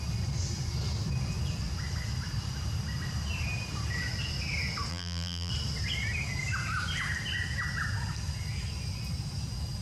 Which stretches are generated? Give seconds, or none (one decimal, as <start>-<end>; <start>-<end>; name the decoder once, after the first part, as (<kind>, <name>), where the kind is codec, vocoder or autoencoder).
4.9-5.5 (vocoder, BigVGAN v2)